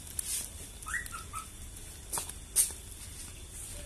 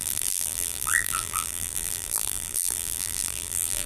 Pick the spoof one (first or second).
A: second